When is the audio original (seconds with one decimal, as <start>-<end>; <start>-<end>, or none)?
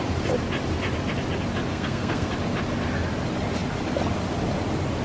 0.0-1.7; 2.3-5.0